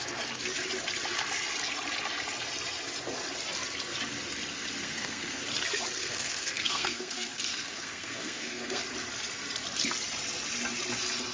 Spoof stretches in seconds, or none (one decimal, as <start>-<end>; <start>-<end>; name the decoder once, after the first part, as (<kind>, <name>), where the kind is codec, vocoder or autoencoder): 4.8-5.4 (codec, SNAC); 6.0-8.8

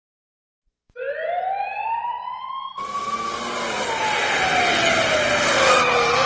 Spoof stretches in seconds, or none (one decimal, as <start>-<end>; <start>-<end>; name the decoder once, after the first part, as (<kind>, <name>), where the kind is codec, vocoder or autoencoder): none

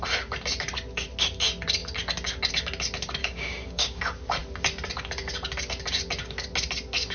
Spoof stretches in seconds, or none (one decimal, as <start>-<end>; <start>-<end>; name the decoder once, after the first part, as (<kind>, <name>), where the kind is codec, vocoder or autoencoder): 3.2-4.0 (codec, DAC)

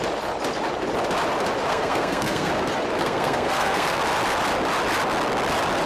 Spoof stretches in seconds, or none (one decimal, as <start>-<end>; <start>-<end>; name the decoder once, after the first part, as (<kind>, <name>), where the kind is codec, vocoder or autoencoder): 1.7-2.5 (codec, SNAC); 3.0-4.0

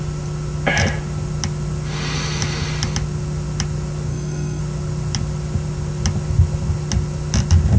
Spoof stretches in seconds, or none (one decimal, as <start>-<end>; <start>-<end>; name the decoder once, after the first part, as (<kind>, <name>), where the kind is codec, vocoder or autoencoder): 4.1-4.6 (codec, SNAC)

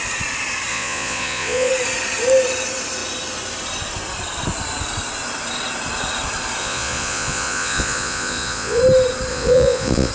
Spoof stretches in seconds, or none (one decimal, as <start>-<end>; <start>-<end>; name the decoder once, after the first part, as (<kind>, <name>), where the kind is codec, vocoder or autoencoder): 0.7-1.7 (vocoder, Vocos); 6.6-8.8; 9.3-10.1

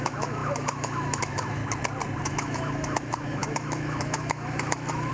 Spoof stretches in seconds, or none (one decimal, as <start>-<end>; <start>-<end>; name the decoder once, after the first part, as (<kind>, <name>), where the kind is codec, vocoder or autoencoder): 0.0-1.6 (autoencoder, DAC-VAE); 2.2-5.1